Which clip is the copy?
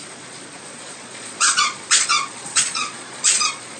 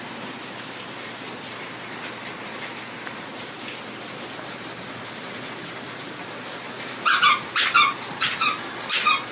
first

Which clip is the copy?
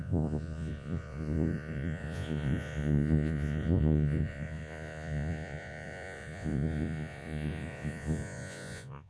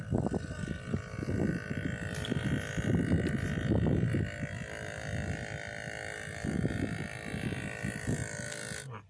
first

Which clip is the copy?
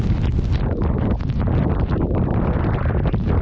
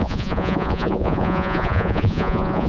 second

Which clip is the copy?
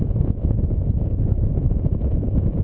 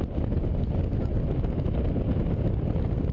first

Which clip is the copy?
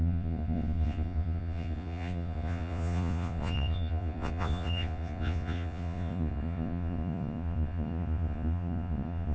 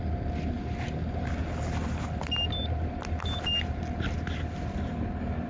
first